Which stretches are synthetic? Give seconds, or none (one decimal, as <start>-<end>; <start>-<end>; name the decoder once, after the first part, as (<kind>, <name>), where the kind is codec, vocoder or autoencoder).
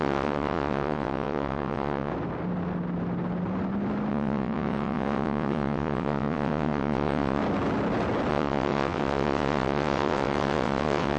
0.0-2.1 (vocoder, WaveNeXt); 4.1-7.4; 8.3-11.2